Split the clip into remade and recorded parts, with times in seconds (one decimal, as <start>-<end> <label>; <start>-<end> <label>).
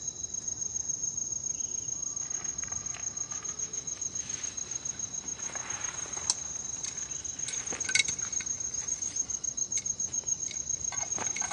0.0-11.5 recorded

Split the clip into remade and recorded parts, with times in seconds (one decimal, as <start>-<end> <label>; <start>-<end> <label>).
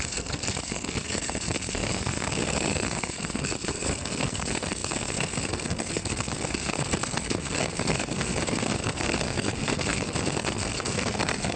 0.0-11.6 remade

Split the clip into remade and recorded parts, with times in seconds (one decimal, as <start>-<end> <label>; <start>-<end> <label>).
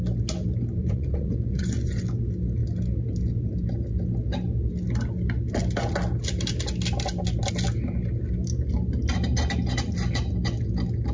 0.0-0.8 recorded; 0.8-2.0 remade; 2.0-11.1 recorded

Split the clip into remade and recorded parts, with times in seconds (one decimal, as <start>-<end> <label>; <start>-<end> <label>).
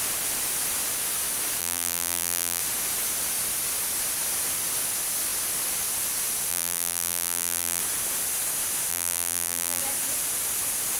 0.0-1.6 recorded; 1.6-2.6 remade; 2.6-6.5 recorded; 6.5-7.8 remade; 7.8-8.9 recorded; 8.9-9.8 remade; 9.8-11.0 recorded